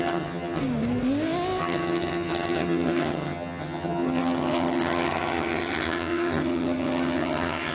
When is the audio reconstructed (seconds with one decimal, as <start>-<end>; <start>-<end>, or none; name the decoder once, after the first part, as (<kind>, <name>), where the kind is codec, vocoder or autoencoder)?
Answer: 0.0-0.6 (vocoder, HiFi-GAN); 1.6-7.7